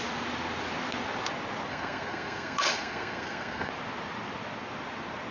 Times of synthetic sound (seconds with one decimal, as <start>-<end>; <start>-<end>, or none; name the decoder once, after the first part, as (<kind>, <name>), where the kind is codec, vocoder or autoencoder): 1.7-3.7 (codec, SNAC)